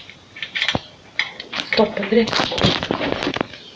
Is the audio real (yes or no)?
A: no